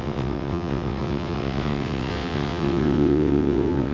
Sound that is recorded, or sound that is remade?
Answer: remade